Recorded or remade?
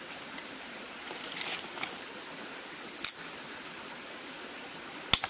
recorded